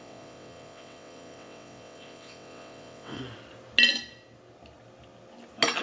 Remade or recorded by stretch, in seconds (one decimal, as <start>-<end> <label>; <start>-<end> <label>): 0.0-3.2 remade; 3.2-5.8 recorded